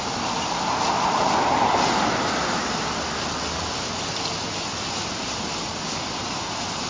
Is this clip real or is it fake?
fake